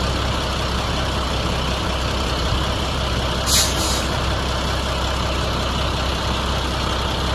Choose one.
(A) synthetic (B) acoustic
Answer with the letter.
B